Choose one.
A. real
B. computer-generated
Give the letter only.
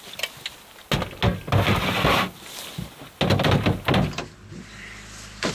A